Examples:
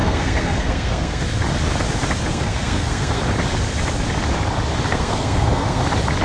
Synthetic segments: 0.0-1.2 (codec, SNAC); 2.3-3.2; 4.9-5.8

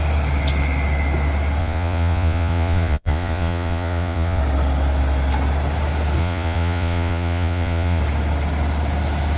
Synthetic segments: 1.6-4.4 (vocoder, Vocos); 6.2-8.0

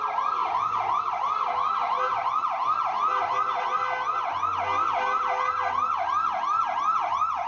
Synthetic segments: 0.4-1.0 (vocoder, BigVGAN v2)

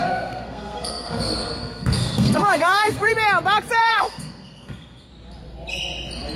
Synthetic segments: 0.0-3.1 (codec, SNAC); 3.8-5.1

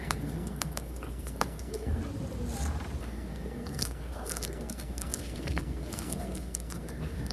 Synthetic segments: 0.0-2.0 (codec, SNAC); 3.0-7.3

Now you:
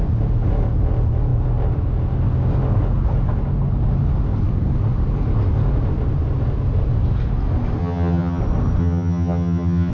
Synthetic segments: 7.8-8.4 (vocoder, HiFi-GAN); 8.8-9.9

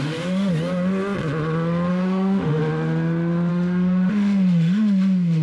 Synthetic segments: 0.0-0.5 (autoencoder, DAC-VAE); 1.9-2.6; 3.5-5.4